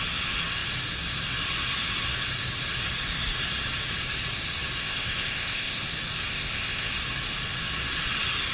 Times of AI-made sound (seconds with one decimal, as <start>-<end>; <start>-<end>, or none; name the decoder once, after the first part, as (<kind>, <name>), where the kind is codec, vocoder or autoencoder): 4.8-5.8 (codec, ZipCodec); 6.3-6.9